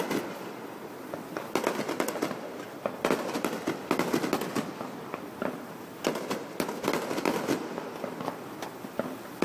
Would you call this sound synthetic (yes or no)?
no